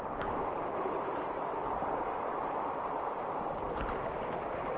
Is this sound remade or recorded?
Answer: recorded